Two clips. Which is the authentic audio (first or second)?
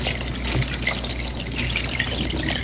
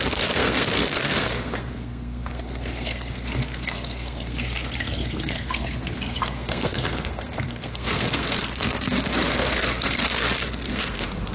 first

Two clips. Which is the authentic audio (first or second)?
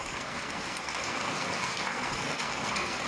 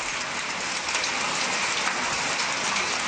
second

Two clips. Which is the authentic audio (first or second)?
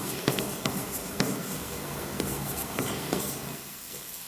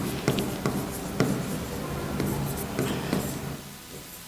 second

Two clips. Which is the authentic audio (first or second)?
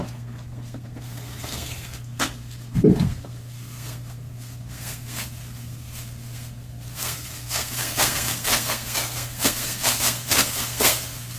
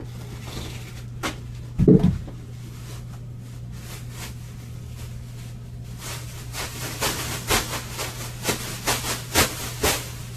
second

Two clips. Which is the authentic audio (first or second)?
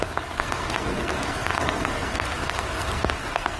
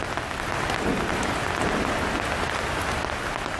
second